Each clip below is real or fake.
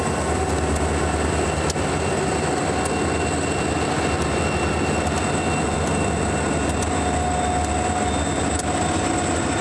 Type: real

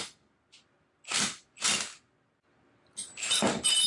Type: real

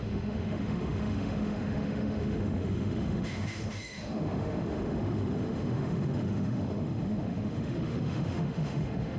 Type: fake